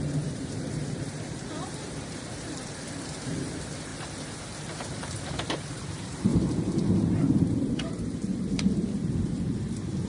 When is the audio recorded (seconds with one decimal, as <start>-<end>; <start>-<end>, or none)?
3.9-4.9